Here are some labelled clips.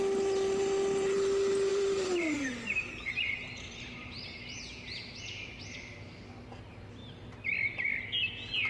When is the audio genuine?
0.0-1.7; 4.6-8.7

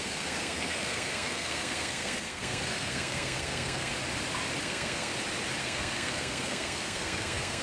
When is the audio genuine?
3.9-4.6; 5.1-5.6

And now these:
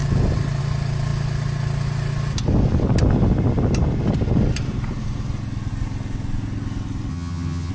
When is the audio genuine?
0.0-7.1

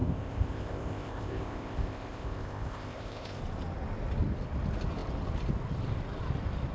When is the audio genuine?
3.4-6.7

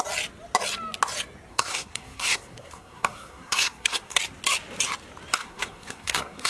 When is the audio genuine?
0.0-1.5; 4.2-5.4